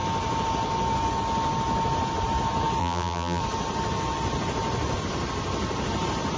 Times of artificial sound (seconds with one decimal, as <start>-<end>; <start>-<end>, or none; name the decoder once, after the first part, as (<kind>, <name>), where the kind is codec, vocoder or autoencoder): 2.8-3.4 (vocoder, BigVGAN v2)